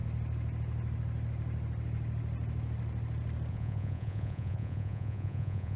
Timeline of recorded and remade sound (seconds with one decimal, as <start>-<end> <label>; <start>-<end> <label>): 0.0-3.5 recorded; 3.5-5.8 remade